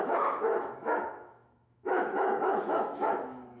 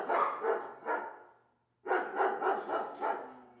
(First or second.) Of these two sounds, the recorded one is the second